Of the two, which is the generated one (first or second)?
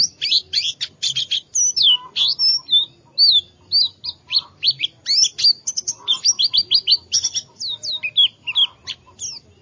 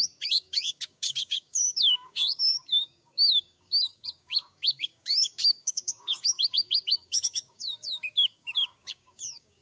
second